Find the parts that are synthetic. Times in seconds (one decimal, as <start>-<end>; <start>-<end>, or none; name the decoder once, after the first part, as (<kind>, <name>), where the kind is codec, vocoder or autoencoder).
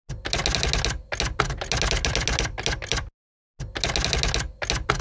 none